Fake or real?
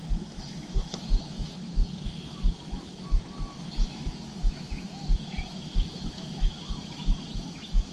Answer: fake